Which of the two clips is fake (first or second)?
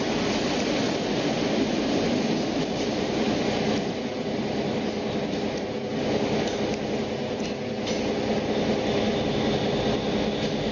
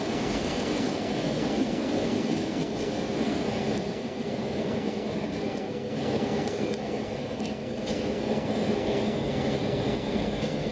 second